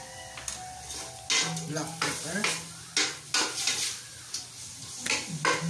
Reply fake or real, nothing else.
real